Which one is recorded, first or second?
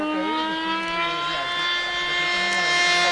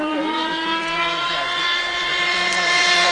first